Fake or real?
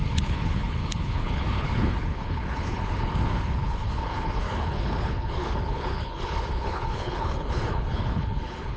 fake